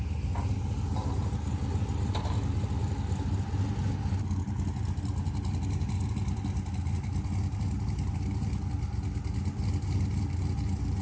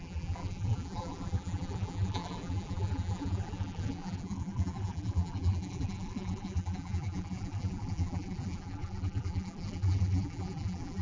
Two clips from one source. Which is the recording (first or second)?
first